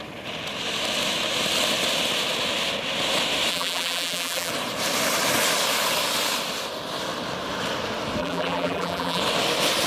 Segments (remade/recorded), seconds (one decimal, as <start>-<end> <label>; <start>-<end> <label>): 0.0-3.5 recorded; 3.5-4.5 remade; 4.5-8.2 recorded; 8.2-9.2 remade; 9.2-9.9 recorded